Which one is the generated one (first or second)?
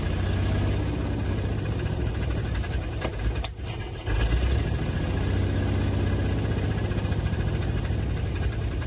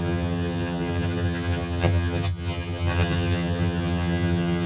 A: second